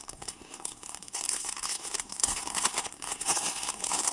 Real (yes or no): no